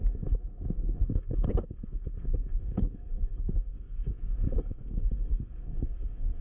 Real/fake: fake